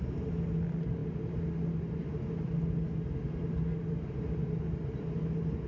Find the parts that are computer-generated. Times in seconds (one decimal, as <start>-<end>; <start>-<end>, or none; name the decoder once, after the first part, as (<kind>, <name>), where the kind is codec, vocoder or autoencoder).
none